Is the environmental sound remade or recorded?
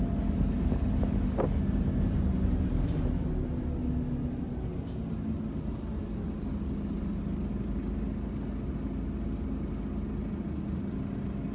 recorded